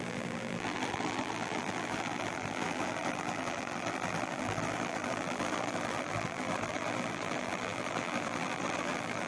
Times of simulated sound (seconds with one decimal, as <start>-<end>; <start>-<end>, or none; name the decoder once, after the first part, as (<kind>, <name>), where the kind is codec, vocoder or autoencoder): 0.0-9.3 (vocoder, BigVGAN v2)